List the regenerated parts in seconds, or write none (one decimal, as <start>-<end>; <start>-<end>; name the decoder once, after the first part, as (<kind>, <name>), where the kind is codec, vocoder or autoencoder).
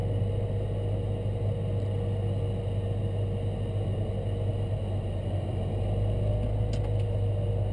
none